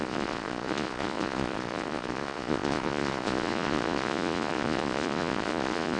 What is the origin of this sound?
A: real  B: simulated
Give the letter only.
B